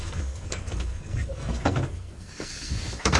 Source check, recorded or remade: remade